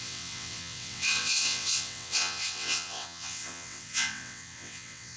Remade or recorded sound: remade